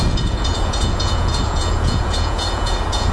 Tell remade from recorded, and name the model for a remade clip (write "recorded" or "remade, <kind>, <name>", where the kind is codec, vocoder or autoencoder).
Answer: remade, vocoder, Vocos